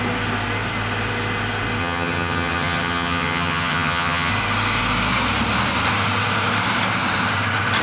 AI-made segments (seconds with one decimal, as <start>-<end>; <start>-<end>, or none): 1.8-4.3